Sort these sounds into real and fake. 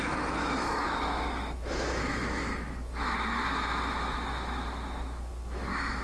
fake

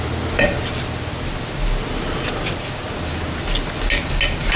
real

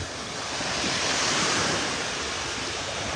real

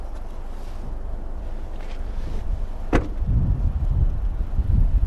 real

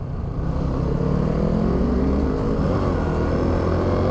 real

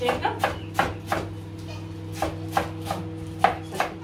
real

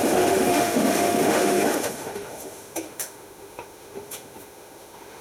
fake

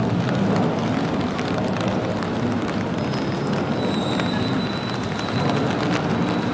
real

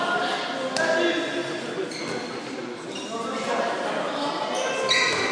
real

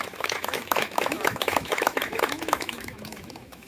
fake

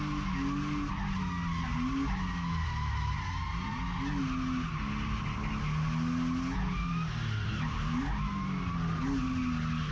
real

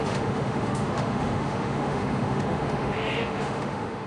fake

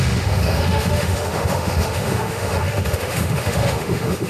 fake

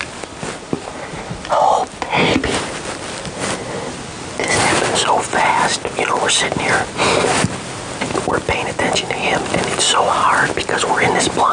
real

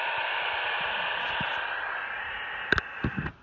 real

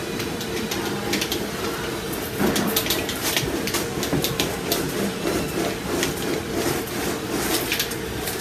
real